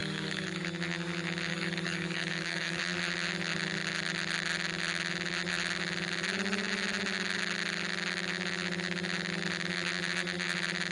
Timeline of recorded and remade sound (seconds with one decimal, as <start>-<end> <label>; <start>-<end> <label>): 0.0-0.6 remade; 0.6-1.5 recorded; 1.5-2.8 remade; 2.8-10.9 recorded